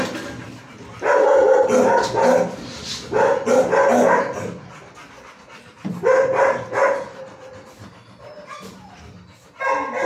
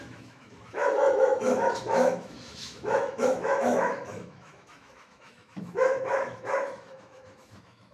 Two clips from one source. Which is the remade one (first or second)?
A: second